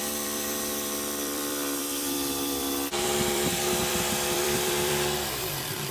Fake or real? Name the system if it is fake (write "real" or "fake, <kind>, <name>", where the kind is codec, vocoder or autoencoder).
fake, vocoder, BigVGAN v2